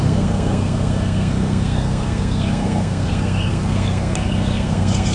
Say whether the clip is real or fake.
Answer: fake